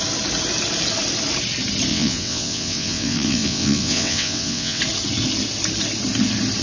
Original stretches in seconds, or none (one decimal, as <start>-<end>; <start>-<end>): 0.0-1.9; 4.8-6.6